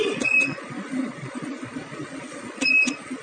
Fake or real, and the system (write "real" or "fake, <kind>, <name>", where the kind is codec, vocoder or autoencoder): fake, vocoder, Vocos